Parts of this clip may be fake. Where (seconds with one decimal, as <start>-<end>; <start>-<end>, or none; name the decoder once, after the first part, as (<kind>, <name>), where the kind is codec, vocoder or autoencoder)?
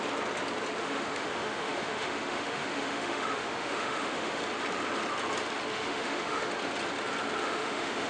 0.8-4.4 (autoencoder, DAC-VAE); 5.7-6.5; 7.4-8.1